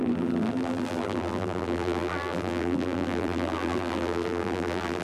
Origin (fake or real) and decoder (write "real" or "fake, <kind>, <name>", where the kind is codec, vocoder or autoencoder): fake, vocoder, BigVGAN v2